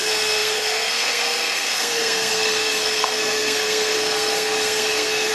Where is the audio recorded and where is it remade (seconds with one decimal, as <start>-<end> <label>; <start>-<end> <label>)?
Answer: 0.0-5.3 remade